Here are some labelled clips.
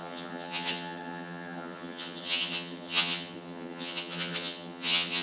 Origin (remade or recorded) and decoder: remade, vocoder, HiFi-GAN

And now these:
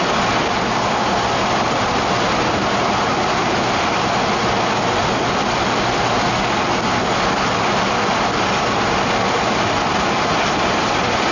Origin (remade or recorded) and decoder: recorded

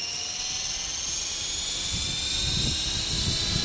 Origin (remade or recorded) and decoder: recorded